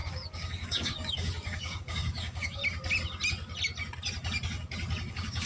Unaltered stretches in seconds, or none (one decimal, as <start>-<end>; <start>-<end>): 2.6-5.1